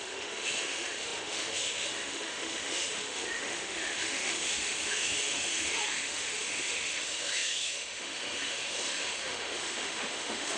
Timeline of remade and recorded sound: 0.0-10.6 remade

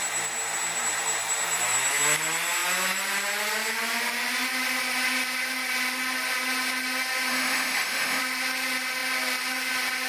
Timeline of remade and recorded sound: 0.0-7.3 recorded; 7.3-8.2 remade; 8.2-10.1 recorded